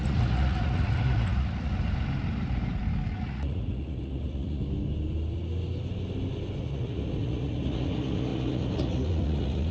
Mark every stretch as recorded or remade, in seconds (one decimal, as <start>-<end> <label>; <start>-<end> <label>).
0.0-1.7 remade; 1.7-3.2 recorded; 3.2-4.6 remade; 4.6-6.6 recorded; 6.6-9.7 remade